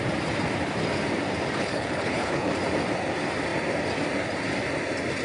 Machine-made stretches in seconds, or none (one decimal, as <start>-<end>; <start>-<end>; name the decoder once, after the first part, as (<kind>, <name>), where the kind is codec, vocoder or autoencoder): 1.6-2.5 (codec, HILCodec)